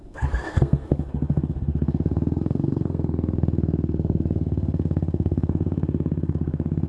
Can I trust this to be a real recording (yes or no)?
no